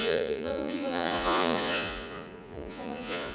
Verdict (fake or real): fake